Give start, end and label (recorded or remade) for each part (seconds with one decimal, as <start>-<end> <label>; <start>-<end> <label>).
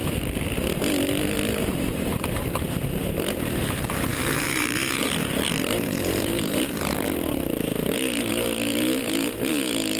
0.0-1.8 recorded; 1.8-10.0 remade